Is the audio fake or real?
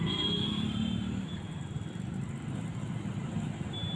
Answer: real